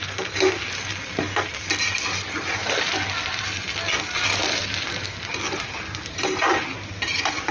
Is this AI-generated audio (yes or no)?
no